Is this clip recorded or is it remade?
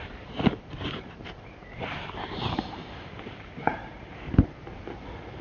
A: remade